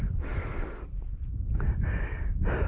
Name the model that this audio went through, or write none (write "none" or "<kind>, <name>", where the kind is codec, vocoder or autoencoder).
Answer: none